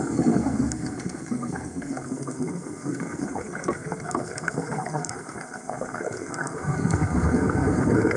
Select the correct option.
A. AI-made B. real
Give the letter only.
A